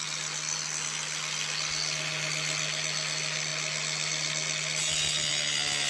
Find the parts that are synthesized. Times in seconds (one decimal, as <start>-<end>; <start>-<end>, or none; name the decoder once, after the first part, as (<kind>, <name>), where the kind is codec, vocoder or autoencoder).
none